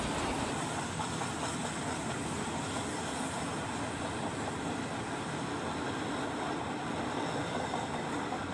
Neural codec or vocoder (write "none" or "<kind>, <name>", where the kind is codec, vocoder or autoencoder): none